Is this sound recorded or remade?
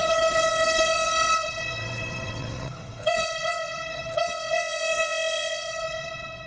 remade